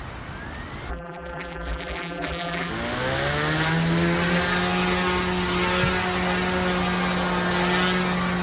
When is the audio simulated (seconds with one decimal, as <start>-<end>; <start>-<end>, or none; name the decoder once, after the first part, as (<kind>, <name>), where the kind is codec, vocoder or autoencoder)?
0.9-2.7 (vocoder, BigVGAN v2)